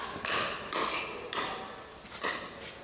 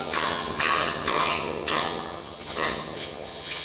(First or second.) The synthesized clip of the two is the second